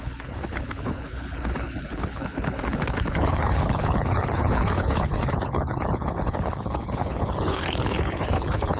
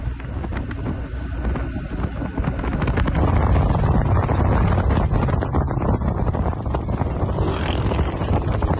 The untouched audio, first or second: second